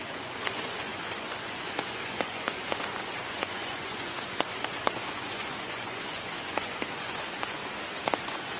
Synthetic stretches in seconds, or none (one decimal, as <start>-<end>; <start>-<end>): 0.0-7.6; 8.2-8.6